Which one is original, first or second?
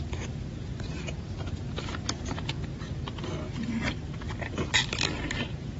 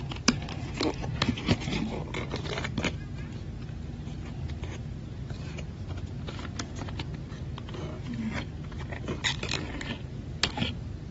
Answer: second